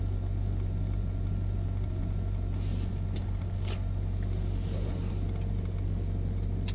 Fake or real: real